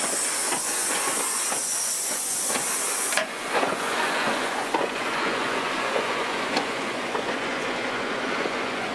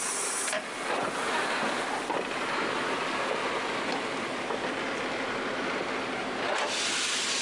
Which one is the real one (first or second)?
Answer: second